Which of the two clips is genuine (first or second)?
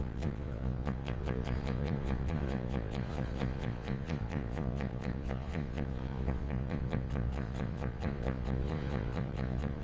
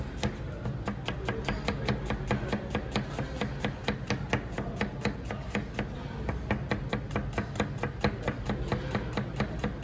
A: second